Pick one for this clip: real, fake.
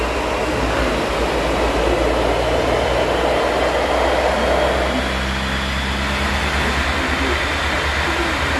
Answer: real